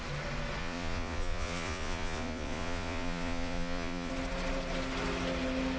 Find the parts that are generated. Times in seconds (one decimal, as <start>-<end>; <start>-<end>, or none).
0.6-4.1